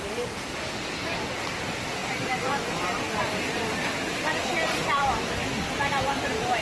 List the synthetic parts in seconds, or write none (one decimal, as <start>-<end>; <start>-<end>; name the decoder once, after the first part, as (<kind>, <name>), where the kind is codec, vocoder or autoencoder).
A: none